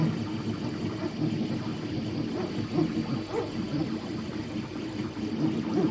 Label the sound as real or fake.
real